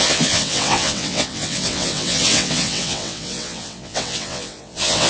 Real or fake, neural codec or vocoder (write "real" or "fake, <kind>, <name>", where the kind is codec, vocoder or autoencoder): fake, vocoder, WaveNeXt